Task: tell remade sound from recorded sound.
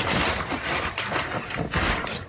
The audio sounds recorded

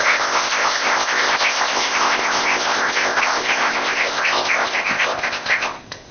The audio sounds remade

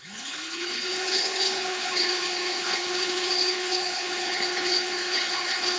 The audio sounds remade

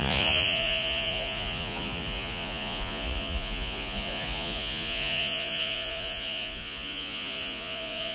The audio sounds remade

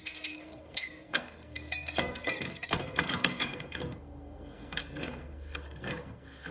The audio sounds remade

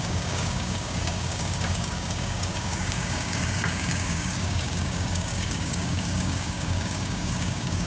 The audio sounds remade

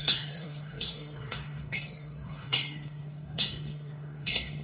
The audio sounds remade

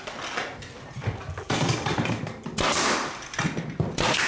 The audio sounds recorded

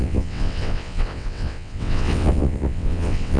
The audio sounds remade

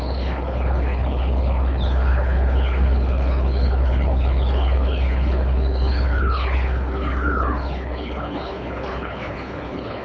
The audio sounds remade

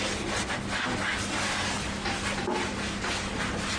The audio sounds recorded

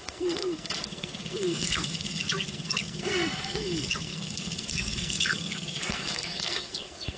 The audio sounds remade